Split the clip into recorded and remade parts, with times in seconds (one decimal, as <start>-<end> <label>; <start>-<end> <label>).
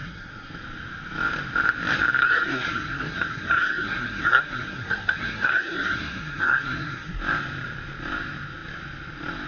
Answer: 0.0-0.5 remade; 0.5-2.2 recorded; 2.2-7.2 remade; 7.2-9.5 recorded